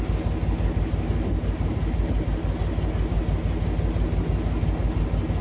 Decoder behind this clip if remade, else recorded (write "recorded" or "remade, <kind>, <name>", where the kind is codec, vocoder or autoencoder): recorded